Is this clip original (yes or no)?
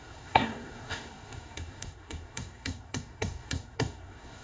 no